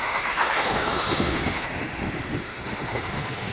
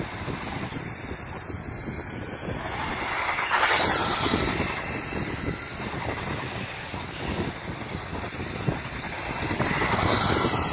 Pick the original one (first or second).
second